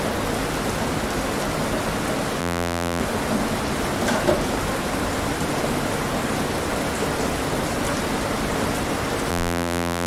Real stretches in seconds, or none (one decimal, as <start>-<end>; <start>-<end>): 0.0-2.4; 3.0-9.3